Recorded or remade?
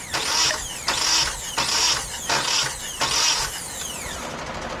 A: recorded